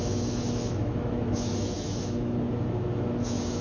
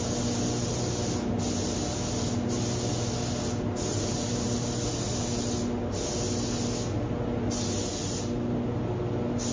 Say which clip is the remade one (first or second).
first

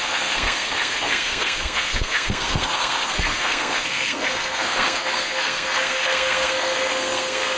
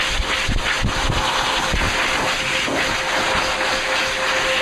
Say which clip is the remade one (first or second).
first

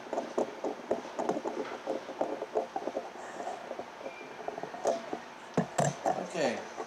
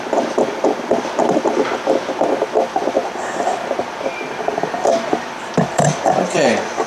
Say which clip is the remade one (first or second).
second